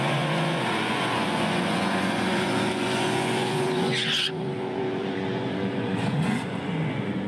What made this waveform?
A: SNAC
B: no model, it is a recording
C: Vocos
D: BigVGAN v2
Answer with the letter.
C